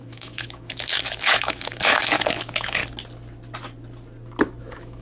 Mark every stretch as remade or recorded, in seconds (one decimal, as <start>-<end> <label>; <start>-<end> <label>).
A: 0.0-2.8 remade; 2.8-4.6 recorded; 4.6-5.0 remade